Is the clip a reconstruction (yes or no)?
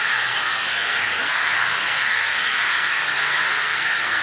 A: yes